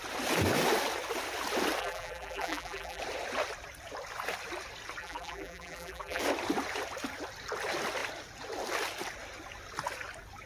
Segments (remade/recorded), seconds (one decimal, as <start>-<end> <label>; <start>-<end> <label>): 0.0-1.8 recorded; 1.8-3.0 remade; 3.0-5.0 recorded; 5.0-6.2 remade; 6.2-10.5 recorded